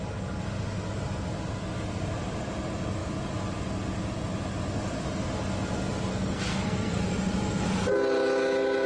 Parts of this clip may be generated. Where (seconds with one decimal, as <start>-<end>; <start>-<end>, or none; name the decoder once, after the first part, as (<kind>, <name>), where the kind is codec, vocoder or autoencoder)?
6.1-7.0 (codec, SNAC)